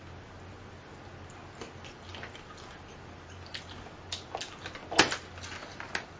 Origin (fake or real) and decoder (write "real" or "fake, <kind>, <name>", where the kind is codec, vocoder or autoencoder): real